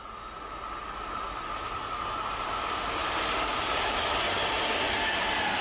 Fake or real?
real